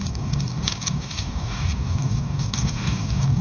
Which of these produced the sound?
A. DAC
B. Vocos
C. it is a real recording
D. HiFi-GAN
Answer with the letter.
A